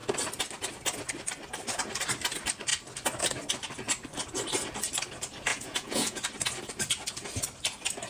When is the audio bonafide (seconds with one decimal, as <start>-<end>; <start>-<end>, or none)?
0.0-5.5; 6.2-8.1